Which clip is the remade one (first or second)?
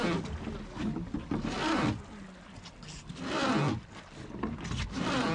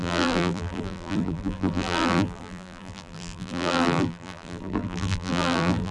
second